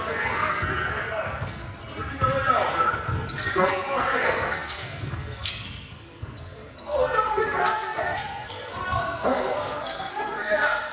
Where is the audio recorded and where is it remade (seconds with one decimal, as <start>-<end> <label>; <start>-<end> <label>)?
0.0-1.6 remade; 1.6-2.7 recorded; 2.7-10.9 remade